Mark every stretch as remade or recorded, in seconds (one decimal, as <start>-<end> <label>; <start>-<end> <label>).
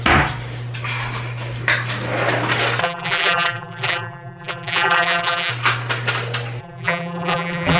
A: 0.0-2.8 recorded; 2.8-5.5 remade; 5.5-6.6 recorded; 6.6-7.8 remade